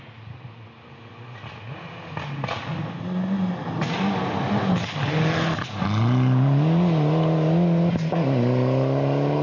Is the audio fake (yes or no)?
no